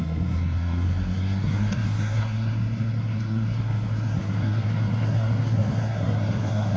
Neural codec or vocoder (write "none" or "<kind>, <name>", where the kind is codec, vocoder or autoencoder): codec, SNAC